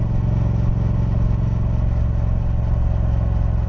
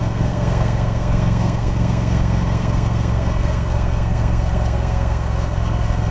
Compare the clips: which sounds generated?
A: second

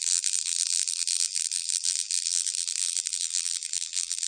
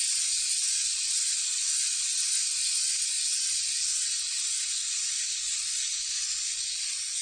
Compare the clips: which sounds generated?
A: first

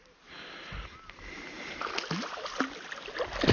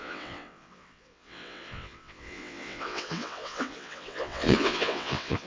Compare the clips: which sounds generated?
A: second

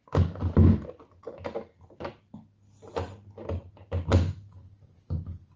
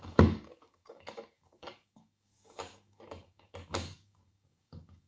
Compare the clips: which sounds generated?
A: second